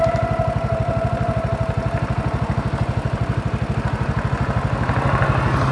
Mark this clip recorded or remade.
recorded